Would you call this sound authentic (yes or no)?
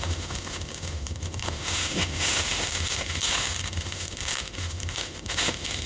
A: no